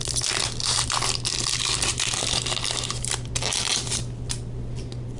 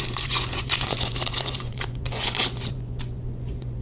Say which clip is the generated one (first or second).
second